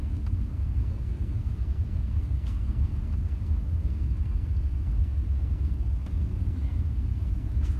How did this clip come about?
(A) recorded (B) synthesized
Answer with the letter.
B